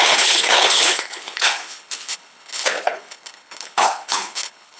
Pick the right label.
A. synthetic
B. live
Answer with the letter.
A